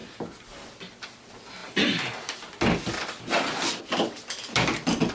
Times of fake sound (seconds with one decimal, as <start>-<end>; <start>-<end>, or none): none

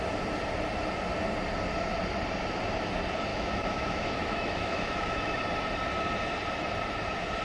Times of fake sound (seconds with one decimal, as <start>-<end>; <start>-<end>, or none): 3.3-5.4

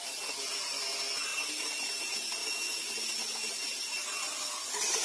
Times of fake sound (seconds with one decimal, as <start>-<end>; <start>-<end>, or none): 2.4-2.9

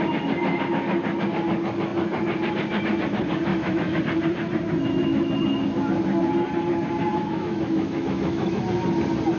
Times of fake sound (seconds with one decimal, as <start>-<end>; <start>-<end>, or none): 3.5-4.0; 4.8-5.3; 7.1-8.6

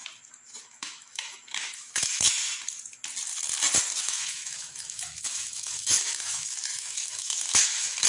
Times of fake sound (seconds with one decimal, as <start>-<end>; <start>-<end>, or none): 0.6-2.4; 4.0-8.1